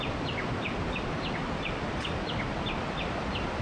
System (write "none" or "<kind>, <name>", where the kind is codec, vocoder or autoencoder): none